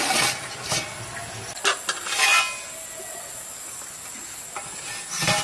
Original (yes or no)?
yes